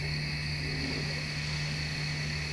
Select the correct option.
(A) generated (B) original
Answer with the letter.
B